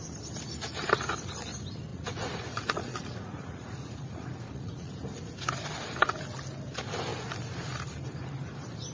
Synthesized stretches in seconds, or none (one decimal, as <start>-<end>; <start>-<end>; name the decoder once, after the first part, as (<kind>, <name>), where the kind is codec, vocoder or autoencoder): 1.9-4.9 (vocoder, Vocos)